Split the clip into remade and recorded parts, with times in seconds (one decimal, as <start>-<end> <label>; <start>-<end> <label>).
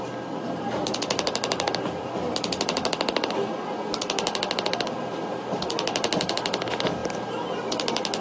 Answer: 0.0-8.2 recorded